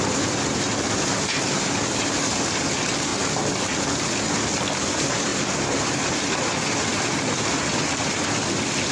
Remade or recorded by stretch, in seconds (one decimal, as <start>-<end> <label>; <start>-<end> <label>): 0.0-8.9 recorded